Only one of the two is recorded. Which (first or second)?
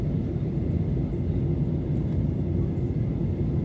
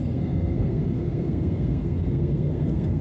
first